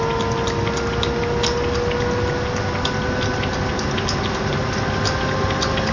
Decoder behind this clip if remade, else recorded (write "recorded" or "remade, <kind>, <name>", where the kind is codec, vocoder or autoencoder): recorded